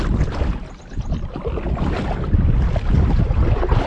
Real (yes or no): no